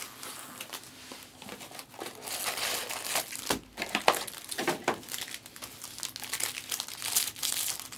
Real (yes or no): yes